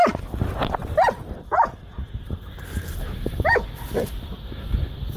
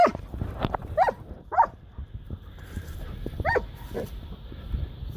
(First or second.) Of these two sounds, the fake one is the second